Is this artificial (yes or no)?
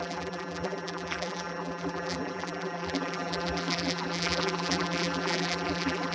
yes